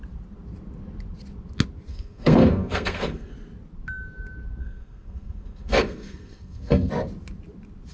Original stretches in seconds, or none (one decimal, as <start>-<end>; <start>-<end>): 0.0-1.9; 3.3-4.6; 6.9-7.9